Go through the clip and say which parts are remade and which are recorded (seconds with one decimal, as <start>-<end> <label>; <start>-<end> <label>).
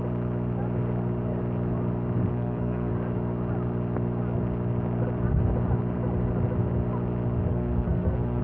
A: 0.0-2.3 recorded; 2.3-2.9 remade; 2.9-7.5 recorded; 7.5-8.4 remade